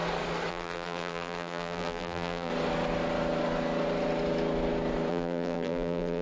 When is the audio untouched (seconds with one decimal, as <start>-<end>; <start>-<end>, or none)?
0.0-0.5; 2.5-5.1